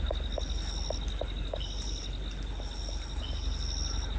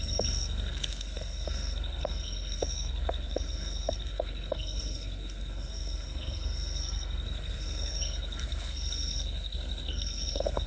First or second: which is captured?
first